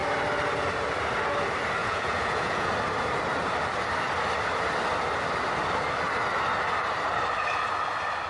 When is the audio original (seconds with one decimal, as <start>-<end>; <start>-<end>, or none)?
0.0-1.8; 2.7-8.3